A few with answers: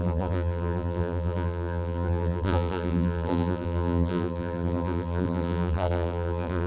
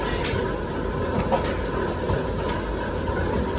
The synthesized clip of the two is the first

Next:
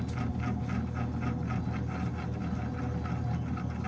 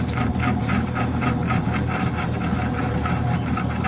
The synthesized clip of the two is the second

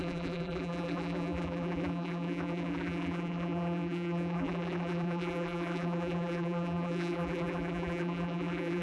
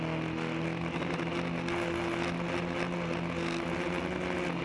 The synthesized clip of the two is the first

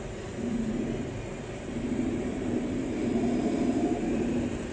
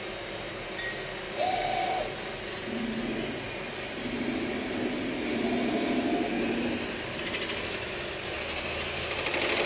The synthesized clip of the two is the first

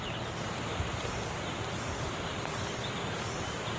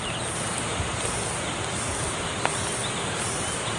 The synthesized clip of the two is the first